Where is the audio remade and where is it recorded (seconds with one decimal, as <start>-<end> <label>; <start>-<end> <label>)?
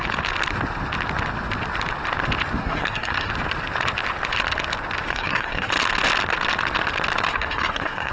0.0-2.6 recorded; 2.6-3.3 remade; 3.3-5.1 recorded; 5.1-5.7 remade; 5.7-7.3 recorded; 7.3-8.1 remade